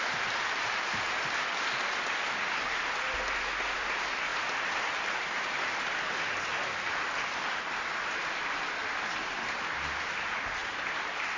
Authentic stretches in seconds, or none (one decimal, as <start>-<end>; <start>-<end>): 0.0-11.4